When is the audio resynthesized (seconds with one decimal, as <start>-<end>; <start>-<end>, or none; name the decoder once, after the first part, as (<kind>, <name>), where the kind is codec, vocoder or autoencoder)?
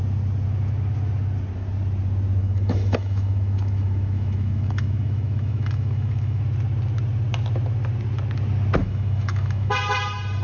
2.4-6.4 (autoencoder, DAC-VAE); 8.8-9.7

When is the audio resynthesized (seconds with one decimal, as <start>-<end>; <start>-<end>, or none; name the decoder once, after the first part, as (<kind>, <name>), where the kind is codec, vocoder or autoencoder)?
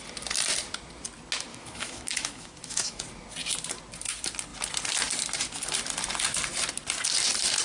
1.5-3.0 (autoencoder, DAC-VAE)